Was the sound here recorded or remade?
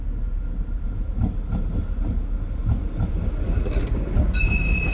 recorded